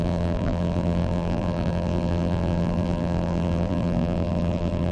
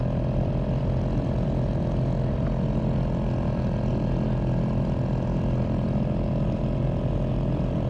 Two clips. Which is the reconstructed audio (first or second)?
first